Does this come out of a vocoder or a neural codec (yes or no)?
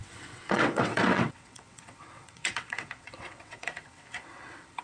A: yes